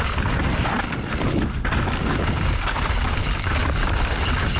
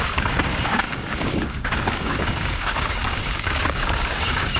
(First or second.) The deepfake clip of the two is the second